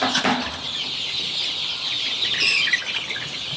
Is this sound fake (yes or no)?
no